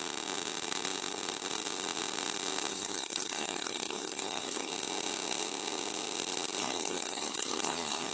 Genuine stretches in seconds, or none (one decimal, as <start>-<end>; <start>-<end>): 0.0-2.7; 4.7-6.6